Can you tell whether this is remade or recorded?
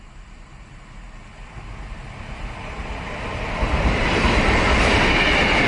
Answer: recorded